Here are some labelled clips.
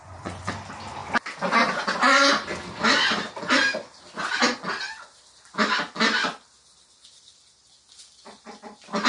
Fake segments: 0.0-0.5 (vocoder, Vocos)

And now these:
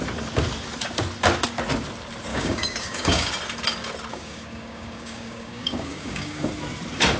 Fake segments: 2.3-3.3 (codec, DAC); 4.1-6.5

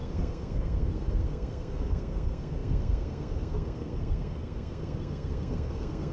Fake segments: 0.0-6.1 (codec, SNAC)

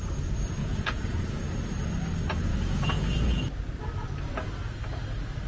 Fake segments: 0.6-1.4 (vocoder, Vocos); 2.5-3.4

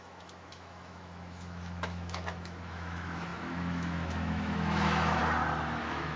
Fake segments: 0.0-5.2 (autoencoder, DAC-VAE); 5.8-6.2

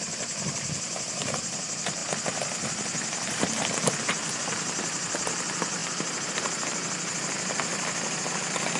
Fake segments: 0.0-2.0 (vocoder, BigVGAN v2); 4.0-5.8; 6.3-8.8

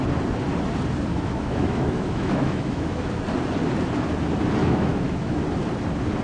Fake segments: 1.1-3.1 (autoencoder, DAC-VAE); 4.6-5.4

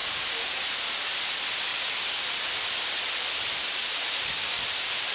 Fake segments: none